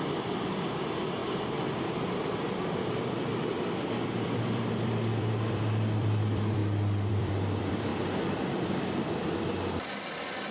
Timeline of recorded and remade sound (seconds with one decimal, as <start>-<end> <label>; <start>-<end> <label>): 0.0-6.6 remade; 6.6-7.1 recorded; 7.1-7.9 remade; 7.9-8.5 recorded; 8.5-10.5 remade